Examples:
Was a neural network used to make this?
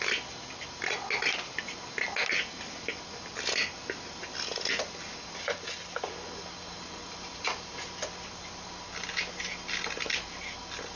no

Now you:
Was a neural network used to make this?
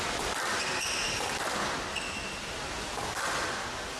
no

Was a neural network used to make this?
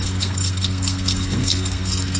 yes